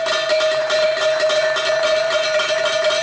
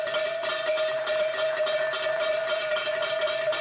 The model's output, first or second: second